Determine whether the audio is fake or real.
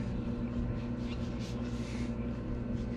real